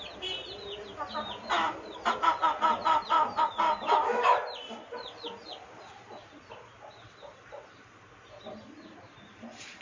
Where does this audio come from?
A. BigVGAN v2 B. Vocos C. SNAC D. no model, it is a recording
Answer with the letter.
D